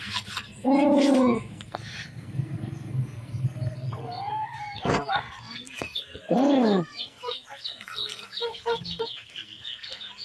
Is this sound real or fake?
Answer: fake